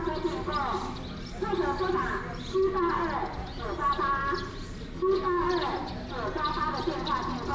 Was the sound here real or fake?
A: real